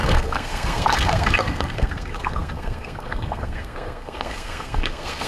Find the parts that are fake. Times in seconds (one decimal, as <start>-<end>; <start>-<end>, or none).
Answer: 0.0-5.3